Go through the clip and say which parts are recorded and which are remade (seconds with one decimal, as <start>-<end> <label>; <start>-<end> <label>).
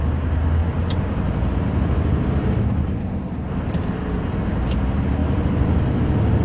0.0-6.4 recorded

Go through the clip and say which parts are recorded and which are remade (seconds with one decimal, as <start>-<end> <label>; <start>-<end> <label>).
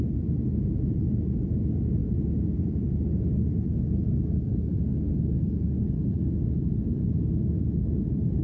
0.0-8.4 recorded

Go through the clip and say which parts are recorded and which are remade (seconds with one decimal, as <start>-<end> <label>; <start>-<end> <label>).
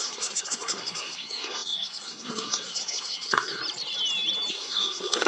0.0-3.6 remade; 3.6-4.5 recorded; 4.5-5.3 remade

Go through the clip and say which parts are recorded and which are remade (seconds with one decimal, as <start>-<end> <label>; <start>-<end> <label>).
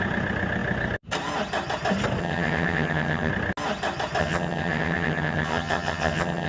0.0-2.2 recorded; 2.2-3.3 remade; 3.3-4.2 recorded; 4.2-6.5 remade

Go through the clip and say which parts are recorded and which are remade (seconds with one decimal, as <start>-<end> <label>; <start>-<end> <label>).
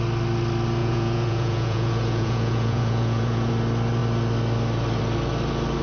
0.0-0.8 recorded; 0.8-3.5 remade; 3.5-5.8 recorded